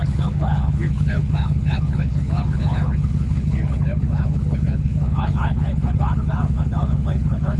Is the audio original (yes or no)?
no